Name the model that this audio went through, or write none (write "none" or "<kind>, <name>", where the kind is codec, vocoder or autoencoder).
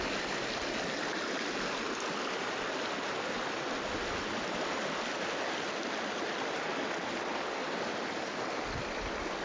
none